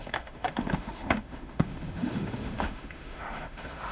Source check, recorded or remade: remade